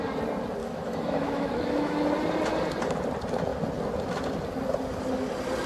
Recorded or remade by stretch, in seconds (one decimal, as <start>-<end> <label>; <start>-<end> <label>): 0.0-0.6 recorded; 0.6-2.0 remade; 2.0-5.7 recorded